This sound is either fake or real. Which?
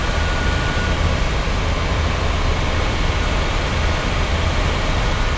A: real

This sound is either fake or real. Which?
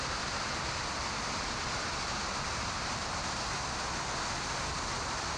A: real